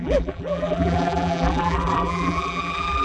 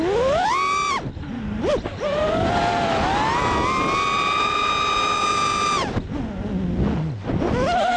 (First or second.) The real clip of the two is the second